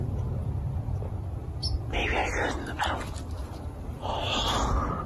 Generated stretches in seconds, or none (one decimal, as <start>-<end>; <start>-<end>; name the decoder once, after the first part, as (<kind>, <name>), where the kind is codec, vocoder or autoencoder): 3.4-4.4 (vocoder, BigVGAN v2)